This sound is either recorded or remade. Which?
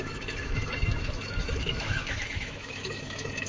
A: remade